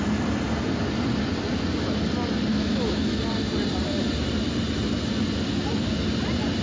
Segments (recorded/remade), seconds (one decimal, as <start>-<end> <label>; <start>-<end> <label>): 0.0-2.5 recorded; 2.5-3.2 remade; 3.2-6.6 recorded